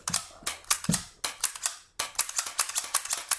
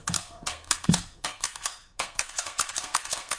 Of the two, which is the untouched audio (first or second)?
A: first